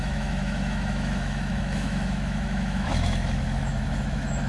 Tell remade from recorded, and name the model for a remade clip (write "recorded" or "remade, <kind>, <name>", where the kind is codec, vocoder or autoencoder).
remade, autoencoder, DAC-VAE